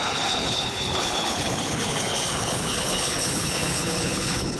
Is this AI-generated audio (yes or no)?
yes